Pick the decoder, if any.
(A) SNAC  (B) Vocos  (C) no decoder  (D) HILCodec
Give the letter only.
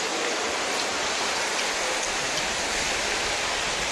C